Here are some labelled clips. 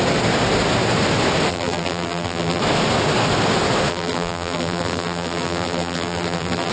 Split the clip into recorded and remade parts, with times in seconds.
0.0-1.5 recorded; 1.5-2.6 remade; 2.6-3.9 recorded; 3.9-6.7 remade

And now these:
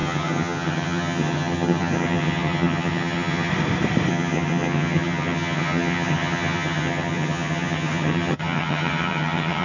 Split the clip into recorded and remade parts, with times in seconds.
0.0-3.5 remade; 3.5-4.1 recorded; 4.1-9.6 remade